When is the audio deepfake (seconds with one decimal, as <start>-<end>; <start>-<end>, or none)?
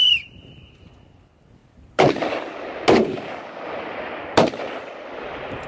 none